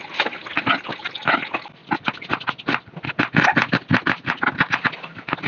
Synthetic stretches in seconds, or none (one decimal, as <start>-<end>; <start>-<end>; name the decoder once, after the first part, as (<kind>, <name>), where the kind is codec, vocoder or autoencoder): none